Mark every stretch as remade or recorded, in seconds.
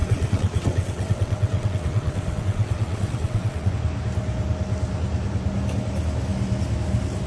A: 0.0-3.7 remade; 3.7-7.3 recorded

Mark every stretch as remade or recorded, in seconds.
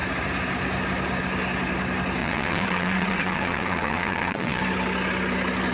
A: 0.0-2.2 recorded; 2.2-4.6 remade; 4.6-5.7 recorded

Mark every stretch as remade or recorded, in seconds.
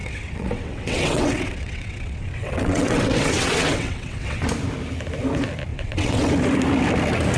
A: 0.0-4.4 remade; 4.4-5.7 recorded; 5.7-6.3 remade; 6.3-7.4 recorded